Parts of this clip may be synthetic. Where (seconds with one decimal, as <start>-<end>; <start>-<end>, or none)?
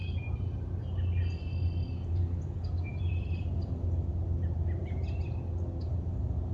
2.9-4.8